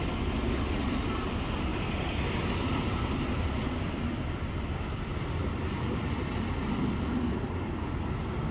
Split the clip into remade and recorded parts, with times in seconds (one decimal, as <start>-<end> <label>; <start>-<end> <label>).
0.0-8.5 recorded